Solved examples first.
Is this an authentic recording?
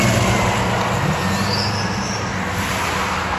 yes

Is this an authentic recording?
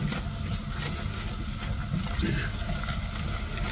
yes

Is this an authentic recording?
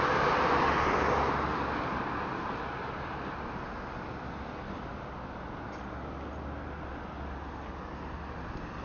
yes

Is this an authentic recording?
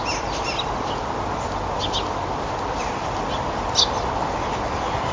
yes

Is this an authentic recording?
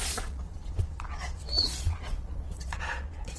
no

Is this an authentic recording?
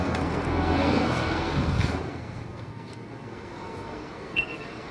no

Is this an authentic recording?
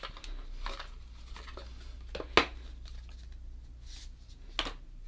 yes